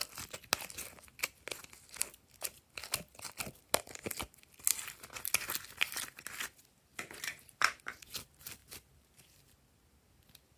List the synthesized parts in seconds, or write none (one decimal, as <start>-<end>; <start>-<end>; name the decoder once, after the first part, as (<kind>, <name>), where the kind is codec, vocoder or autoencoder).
6.9-7.8 (vocoder, BigVGAN v2); 8.6-9.5